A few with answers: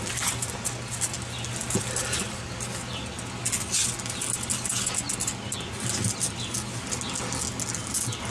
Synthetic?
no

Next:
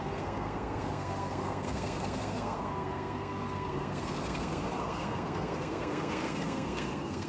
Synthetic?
yes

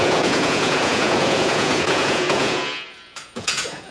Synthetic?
yes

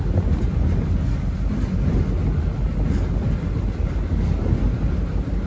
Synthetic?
no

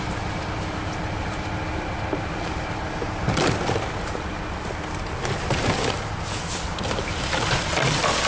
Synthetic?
no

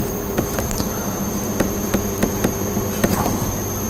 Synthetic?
yes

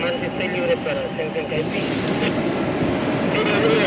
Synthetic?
no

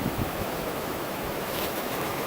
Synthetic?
yes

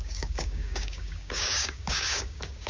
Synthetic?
yes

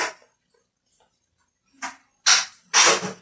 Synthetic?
no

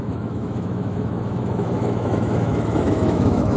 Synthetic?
yes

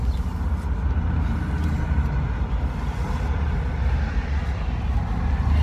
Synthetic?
no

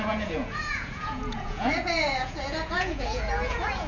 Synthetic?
yes